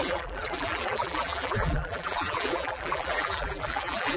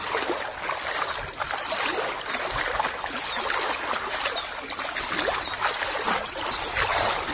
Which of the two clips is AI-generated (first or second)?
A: first